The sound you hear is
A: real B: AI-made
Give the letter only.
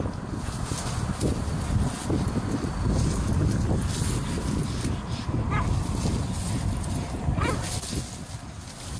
A